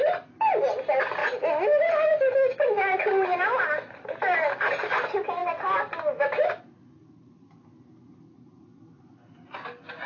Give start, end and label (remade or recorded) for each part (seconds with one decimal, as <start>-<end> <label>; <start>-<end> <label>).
0.0-10.1 recorded